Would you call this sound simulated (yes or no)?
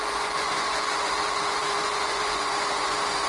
yes